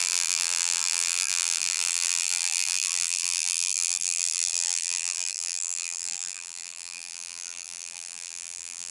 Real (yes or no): no